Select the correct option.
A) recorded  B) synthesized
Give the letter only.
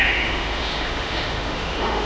B